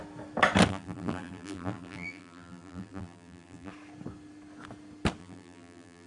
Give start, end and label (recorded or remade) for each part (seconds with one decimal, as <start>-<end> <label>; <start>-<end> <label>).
0.0-0.7 recorded; 0.7-3.7 remade; 3.7-5.2 recorded; 5.2-6.1 remade

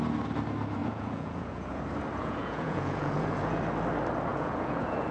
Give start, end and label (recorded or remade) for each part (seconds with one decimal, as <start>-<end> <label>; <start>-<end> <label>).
0.0-0.8 recorded; 0.8-1.8 remade; 1.8-2.2 recorded; 2.2-3.6 remade; 3.6-4.3 recorded; 4.3-5.1 remade

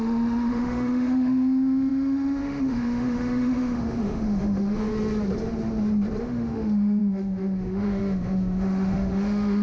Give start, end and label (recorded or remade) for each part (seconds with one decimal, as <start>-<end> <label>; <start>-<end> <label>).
0.0-4.9 remade; 4.9-6.2 recorded; 6.2-9.6 remade

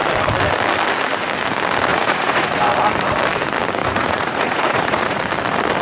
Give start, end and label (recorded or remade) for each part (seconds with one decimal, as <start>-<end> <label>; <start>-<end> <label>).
0.0-1.9 recorded; 1.9-2.6 remade; 2.6-3.8 recorded; 3.8-5.2 remade; 5.2-5.8 recorded

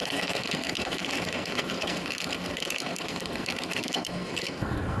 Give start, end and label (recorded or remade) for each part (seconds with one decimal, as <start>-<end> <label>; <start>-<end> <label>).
0.0-5.0 remade

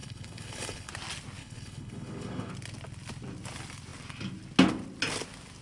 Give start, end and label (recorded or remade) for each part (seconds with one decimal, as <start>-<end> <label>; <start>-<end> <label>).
0.0-0.9 remade; 0.9-1.4 recorded; 1.4-2.5 remade; 2.5-5.6 recorded

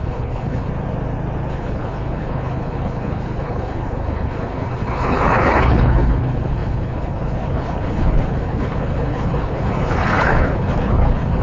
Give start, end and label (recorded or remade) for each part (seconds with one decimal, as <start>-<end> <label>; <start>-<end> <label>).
0.0-0.7 remade; 0.7-1.5 recorded; 1.5-11.4 remade